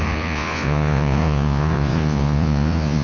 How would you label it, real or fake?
fake